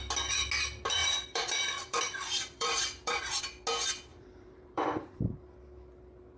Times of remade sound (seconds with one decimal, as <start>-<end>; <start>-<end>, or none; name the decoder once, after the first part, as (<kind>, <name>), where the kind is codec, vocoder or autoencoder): 1.0-3.4 (vocoder, BigVGAN v2); 4.1-5.2